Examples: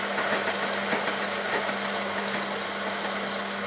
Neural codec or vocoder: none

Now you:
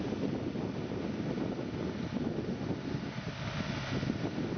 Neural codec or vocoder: none